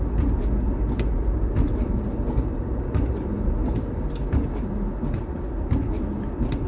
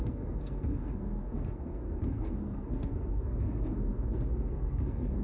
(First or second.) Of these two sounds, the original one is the first